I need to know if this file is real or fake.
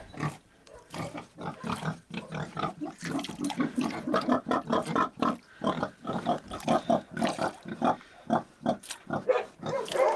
fake